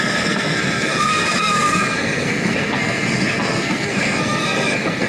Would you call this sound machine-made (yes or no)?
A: yes